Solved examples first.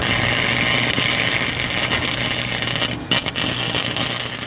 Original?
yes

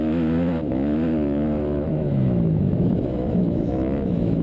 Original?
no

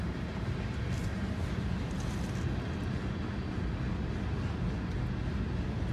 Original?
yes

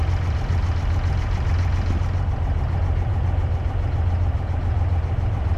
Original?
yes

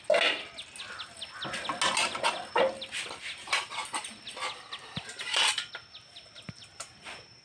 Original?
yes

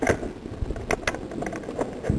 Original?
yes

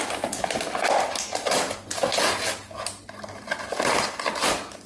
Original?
yes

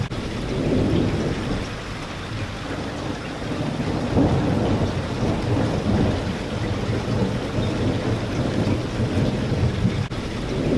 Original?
yes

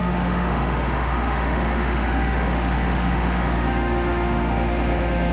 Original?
no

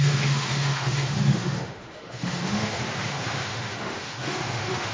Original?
no